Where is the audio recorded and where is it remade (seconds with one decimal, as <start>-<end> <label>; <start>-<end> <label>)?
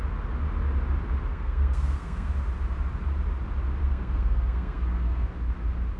0.0-1.3 recorded; 1.3-2.3 remade; 2.3-3.8 recorded; 3.8-5.3 remade; 5.3-6.0 recorded